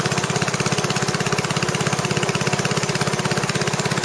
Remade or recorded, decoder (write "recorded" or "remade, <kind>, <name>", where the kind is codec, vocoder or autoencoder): recorded